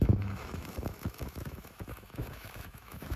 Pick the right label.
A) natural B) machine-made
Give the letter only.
B